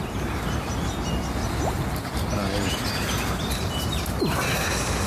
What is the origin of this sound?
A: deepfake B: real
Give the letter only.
B